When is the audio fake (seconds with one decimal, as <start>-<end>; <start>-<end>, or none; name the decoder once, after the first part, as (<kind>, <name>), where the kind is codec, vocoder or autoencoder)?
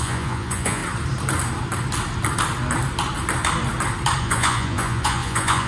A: 0.0-0.8 (vocoder, Vocos); 4.2-5.7